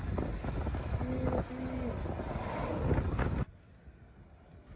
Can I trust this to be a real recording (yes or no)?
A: yes